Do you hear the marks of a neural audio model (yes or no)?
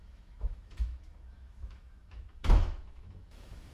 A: yes